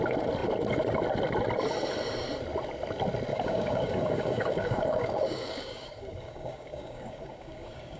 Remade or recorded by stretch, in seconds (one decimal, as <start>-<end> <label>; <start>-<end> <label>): 0.0-3.3 recorded; 3.3-8.0 remade

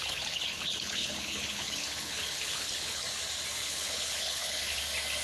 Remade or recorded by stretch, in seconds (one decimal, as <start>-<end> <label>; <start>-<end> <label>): 0.0-3.0 remade; 3.0-3.6 recorded; 3.6-4.8 remade; 4.8-5.2 recorded